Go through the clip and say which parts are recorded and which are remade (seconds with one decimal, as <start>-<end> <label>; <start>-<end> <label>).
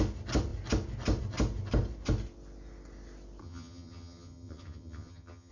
0.0-3.4 recorded; 3.4-5.5 remade